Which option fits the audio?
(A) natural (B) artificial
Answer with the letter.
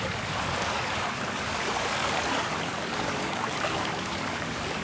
B